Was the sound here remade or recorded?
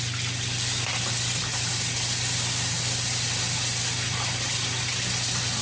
recorded